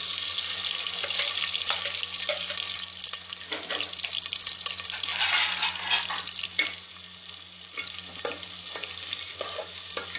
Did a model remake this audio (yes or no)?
no